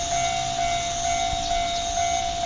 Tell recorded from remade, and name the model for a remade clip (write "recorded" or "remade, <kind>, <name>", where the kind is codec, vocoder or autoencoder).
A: recorded